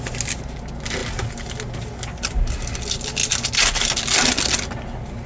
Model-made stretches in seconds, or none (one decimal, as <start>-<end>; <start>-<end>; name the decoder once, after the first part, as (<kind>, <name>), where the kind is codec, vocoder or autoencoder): none